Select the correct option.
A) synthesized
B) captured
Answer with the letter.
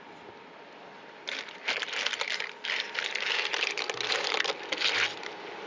B